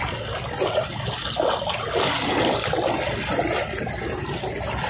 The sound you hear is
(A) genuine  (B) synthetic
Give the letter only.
A